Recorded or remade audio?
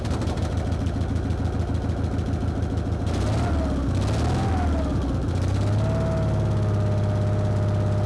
recorded